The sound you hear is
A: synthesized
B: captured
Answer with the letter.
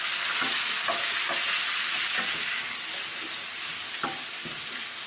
B